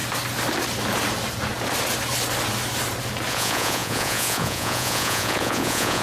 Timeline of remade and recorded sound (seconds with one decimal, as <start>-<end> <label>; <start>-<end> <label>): 0.0-3.3 recorded; 3.3-6.0 remade